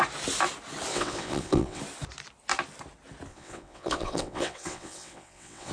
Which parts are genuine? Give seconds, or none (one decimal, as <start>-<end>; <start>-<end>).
0.0-0.9; 1.8-3.3